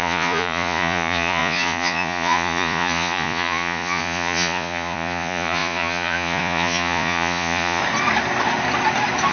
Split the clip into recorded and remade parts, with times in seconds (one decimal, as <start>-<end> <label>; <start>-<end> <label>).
0.0-7.8 remade; 7.8-9.3 recorded